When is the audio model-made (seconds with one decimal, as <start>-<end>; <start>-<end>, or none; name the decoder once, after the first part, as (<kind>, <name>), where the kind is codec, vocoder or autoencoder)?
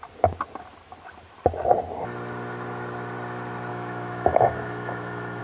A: 3.7-5.4 (autoencoder, DAC-VAE)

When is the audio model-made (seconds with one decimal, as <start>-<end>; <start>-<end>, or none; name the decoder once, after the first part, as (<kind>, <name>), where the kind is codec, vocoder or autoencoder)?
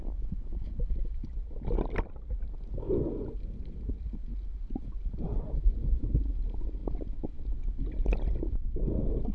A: none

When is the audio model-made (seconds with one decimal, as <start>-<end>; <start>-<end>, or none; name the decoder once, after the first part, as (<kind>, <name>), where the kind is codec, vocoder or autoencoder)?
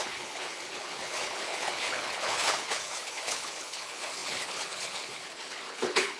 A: 0.0-6.2 (codec, HILCodec)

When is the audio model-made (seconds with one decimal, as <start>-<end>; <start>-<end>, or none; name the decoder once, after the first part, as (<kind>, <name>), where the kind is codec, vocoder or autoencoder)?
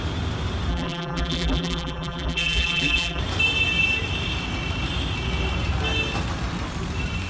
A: 0.7-3.2 (vocoder, BigVGAN v2)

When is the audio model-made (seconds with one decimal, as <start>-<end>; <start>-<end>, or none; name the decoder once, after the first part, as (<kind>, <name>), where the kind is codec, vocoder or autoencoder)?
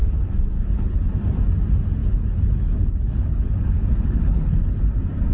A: 0.0-1.1 (codec, HILCodec); 2.0-4.8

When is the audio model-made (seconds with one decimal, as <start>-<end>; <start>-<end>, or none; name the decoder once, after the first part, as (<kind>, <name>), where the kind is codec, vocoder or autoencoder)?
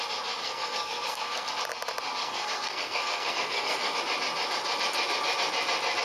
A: 0.4-1.5 (codec, SNAC); 2.2-4.0